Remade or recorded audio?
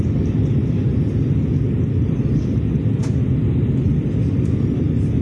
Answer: recorded